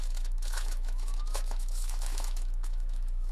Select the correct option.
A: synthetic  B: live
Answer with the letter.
A